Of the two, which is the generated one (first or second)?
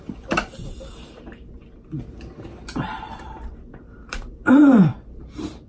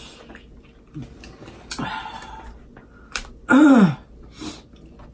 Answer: first